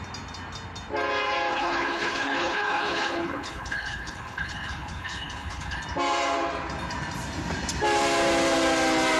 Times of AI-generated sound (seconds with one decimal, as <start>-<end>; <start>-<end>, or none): 1.5-5.8